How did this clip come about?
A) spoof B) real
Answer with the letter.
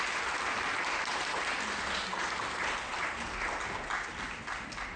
B